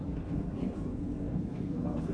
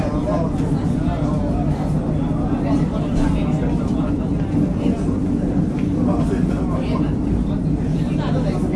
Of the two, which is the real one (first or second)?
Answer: second